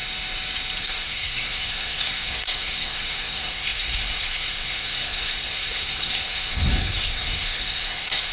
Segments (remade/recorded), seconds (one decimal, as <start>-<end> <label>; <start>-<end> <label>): 0.0-0.8 recorded; 0.8-8.3 remade